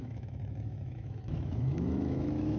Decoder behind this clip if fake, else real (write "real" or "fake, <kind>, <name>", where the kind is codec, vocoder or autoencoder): fake, autoencoder, DAC-VAE